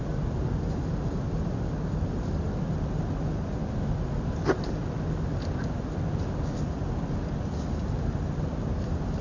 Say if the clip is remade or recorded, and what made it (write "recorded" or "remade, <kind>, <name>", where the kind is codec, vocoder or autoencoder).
recorded